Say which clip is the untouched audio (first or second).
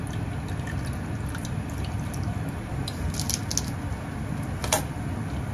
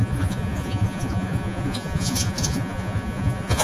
first